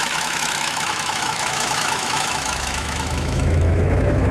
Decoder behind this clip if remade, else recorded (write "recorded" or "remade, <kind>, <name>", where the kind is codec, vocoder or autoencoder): remade, autoencoder, DAC-VAE